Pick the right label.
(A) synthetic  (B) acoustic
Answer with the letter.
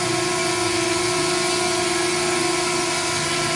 B